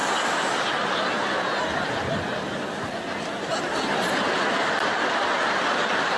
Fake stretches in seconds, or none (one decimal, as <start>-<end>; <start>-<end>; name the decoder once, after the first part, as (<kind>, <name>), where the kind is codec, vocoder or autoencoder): none

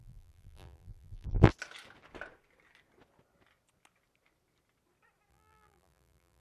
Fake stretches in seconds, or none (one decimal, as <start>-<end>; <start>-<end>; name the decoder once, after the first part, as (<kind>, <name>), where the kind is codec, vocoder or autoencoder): 0.0-1.5 (vocoder, BigVGAN v2); 5.3-6.4